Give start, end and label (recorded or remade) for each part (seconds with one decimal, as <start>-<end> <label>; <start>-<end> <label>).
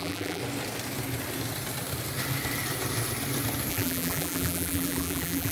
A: 0.0-0.4 remade; 0.4-3.7 recorded; 3.7-5.5 remade